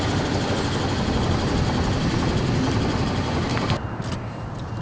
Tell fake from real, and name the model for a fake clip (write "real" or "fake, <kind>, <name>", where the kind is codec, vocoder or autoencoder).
real